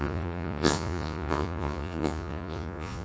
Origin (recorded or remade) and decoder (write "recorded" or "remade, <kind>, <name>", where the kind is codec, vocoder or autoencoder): remade, vocoder, Vocos